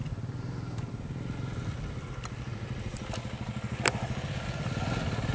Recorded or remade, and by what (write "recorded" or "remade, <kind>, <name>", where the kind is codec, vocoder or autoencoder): recorded